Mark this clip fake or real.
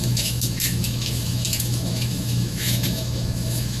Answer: fake